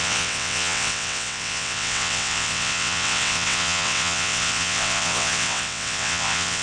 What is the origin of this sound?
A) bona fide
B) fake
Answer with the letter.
B